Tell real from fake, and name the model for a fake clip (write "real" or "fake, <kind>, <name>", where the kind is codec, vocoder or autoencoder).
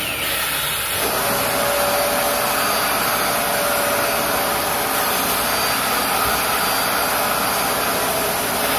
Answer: real